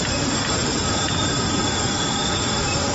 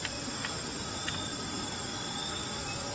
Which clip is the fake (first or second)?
first